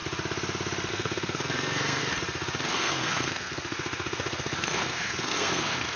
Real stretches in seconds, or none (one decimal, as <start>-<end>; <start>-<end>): 0.0-0.9; 2.0-2.7